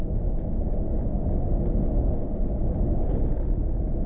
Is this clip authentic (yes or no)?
yes